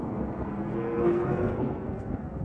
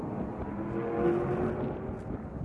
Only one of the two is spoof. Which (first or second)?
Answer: first